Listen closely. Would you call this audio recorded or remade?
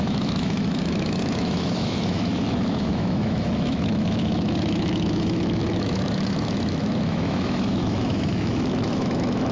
remade